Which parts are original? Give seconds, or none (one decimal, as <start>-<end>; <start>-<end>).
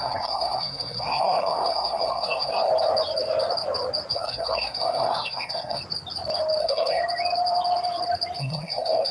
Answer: 2.7-4.1; 5.8-6.6; 7.0-8.4